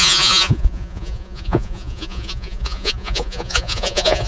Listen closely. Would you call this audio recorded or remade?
remade